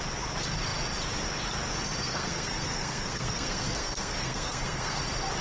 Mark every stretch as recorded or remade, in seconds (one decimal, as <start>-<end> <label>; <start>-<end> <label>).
0.0-2.0 recorded; 2.0-5.0 remade; 5.0-5.4 recorded